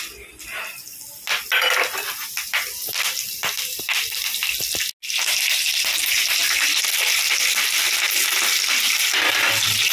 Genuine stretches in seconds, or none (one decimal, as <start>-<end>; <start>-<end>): 0.0-9.9